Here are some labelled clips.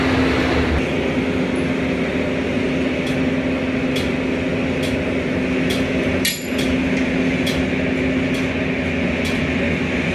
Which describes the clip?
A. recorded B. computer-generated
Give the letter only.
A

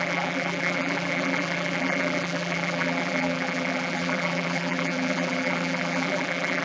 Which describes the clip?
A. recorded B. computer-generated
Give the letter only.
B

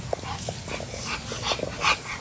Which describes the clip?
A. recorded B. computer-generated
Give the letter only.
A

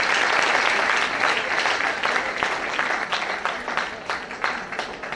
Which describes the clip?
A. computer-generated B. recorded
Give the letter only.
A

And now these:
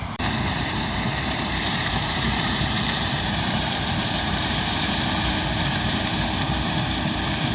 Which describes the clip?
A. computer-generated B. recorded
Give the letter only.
A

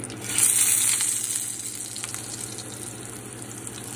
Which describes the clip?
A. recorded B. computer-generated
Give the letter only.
A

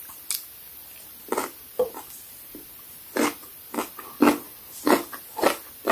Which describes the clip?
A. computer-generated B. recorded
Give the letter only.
B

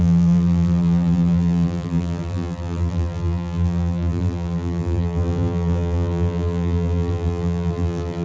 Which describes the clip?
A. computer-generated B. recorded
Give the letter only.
A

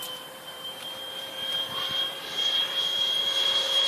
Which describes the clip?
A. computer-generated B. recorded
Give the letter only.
A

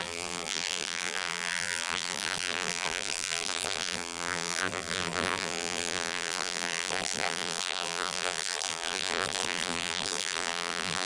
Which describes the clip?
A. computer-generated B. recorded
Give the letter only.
A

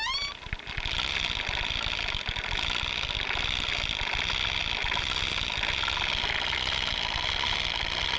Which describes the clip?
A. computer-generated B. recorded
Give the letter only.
B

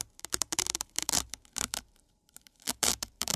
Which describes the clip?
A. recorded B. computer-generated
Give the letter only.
B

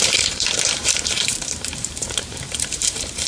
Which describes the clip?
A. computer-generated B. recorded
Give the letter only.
A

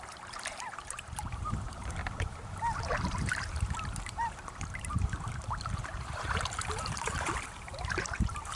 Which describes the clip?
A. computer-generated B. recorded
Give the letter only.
A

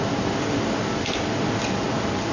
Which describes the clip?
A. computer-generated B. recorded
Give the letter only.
B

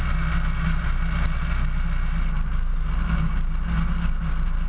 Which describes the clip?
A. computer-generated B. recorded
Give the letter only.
B